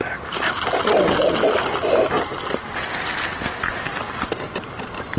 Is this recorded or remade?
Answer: recorded